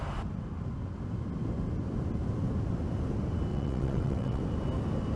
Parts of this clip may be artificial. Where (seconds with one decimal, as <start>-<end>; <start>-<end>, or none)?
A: 3.5-4.4